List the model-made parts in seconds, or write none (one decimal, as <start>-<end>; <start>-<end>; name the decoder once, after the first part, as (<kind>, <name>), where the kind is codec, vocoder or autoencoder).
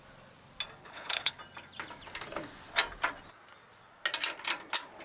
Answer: 0.8-1.4 (codec, HILCodec)